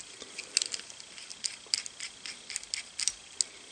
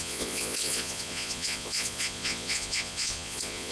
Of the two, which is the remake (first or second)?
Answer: second